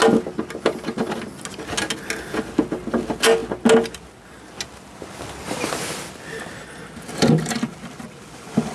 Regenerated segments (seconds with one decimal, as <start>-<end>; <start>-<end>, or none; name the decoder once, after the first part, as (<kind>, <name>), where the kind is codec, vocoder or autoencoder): none

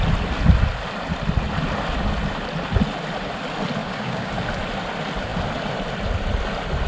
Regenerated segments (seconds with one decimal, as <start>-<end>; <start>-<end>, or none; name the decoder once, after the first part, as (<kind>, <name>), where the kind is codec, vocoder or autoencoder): 3.8-4.3 (codec, DAC)

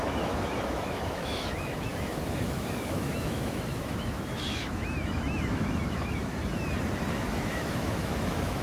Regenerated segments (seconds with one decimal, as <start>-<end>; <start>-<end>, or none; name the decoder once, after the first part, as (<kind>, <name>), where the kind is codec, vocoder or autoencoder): 0.0-6.4 (autoencoder, DAC-VAE); 7.1-8.6

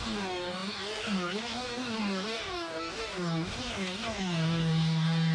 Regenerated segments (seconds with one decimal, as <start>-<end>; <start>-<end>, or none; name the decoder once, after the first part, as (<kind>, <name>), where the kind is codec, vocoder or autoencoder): 0.0-5.3 (codec, DAC)